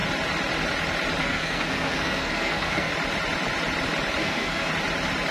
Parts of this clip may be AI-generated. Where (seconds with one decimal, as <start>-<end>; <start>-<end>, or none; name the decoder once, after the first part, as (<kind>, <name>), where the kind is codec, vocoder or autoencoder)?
1.2-2.9 (codec, SNAC); 4.2-4.7